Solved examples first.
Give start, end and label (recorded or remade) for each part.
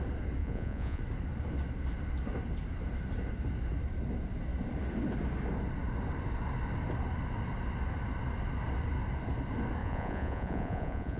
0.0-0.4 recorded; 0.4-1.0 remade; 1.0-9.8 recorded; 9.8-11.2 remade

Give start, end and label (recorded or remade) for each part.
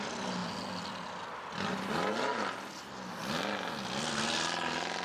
0.0-5.0 recorded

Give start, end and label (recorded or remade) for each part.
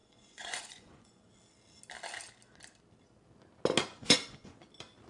0.0-1.3 remade; 1.3-3.9 recorded; 3.9-4.6 remade; 4.6-5.1 recorded